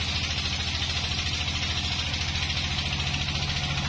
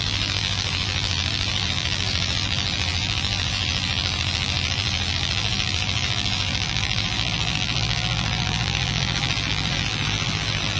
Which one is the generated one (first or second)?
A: second